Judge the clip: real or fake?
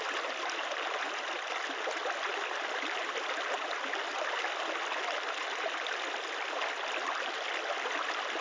real